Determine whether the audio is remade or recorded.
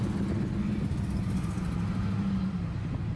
recorded